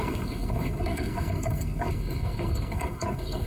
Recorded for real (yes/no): no